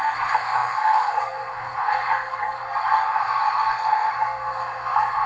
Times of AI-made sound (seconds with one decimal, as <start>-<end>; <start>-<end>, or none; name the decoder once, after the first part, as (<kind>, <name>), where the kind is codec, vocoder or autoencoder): 0.0-5.3 (codec, SNAC)